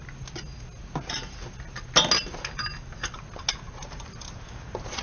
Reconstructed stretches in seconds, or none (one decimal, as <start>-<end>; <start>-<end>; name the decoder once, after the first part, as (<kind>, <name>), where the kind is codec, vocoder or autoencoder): none